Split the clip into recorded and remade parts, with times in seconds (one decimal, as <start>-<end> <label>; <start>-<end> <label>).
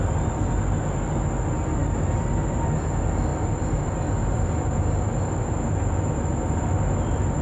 0.0-1.8 recorded; 1.8-2.9 remade; 2.9-3.3 recorded; 3.3-5.0 remade; 5.0-6.3 recorded; 6.3-7.4 remade